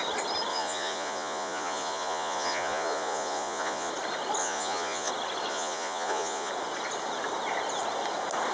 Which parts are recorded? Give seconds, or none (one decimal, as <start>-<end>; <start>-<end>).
0.0-0.5; 3.9-4.4; 5.1-5.5; 6.5-8.5